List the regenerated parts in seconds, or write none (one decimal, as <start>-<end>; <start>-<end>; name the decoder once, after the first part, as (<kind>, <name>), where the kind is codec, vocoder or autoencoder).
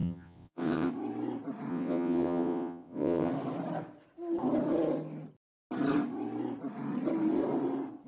0.0-0.9 (vocoder, WaveNeXt); 1.7-3.3